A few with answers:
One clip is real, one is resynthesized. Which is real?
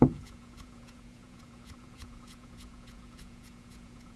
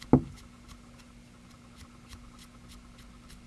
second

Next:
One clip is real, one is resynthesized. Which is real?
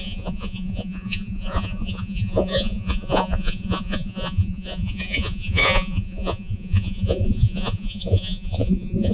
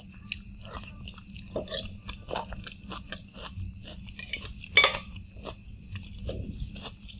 second